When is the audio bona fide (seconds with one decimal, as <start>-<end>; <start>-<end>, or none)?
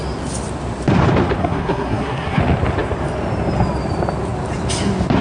0.0-1.4; 2.4-5.2